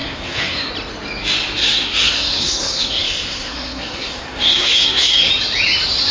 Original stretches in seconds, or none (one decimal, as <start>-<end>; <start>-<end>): 0.7-1.6; 5.3-6.1